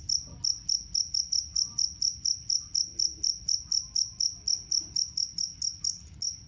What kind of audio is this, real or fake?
real